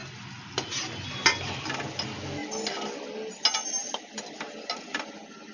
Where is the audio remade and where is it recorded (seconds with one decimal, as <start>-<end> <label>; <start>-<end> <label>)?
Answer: 0.0-5.5 recorded